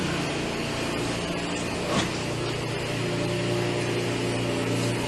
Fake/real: real